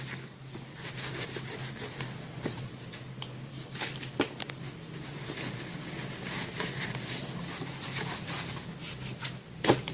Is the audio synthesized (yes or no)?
no